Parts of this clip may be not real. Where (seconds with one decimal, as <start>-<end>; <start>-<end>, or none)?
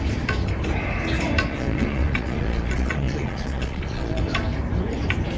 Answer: 1.5-4.2